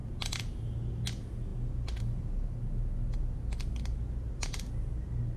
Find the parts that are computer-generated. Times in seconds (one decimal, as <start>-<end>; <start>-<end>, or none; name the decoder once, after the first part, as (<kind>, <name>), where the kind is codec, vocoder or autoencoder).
none